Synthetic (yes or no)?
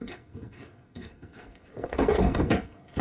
yes